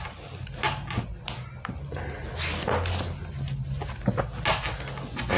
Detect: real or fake real